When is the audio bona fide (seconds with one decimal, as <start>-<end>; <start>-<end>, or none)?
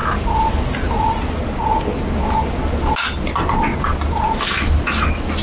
0.0-5.4